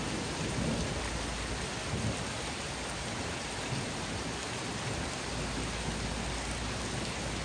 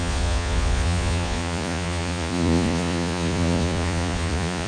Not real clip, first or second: second